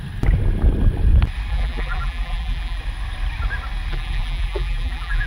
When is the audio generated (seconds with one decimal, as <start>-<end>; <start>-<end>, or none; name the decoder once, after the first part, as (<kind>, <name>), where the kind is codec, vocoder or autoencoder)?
1.5-2.8 (vocoder, BigVGAN v2); 3.9-5.3